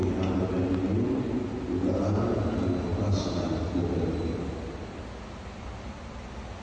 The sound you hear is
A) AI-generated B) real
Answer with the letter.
B